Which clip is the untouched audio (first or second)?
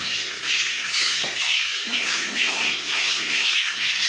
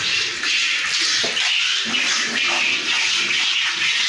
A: second